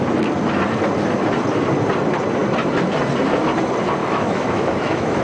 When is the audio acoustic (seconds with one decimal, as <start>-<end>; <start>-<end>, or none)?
0.0-4.0